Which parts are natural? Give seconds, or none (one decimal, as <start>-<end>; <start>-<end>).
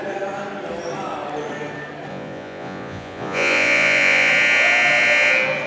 0.0-2.1; 4.3-5.7